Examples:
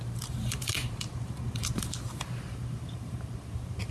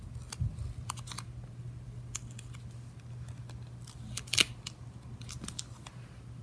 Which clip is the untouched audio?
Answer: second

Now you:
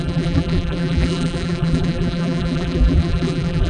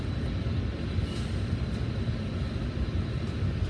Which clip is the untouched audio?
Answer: second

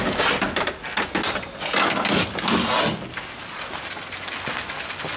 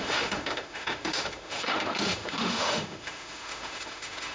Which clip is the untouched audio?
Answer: first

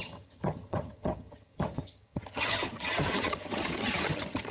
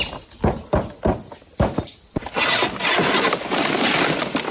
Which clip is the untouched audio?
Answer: second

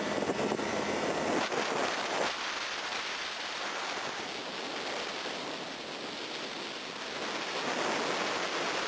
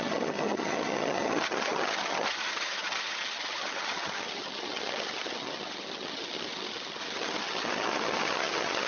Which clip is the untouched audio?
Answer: first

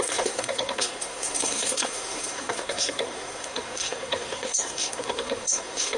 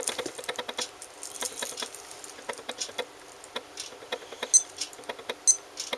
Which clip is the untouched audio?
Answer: second